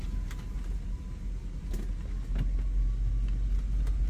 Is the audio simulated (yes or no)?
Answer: no